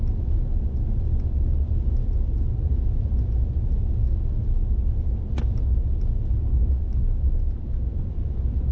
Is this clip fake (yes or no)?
no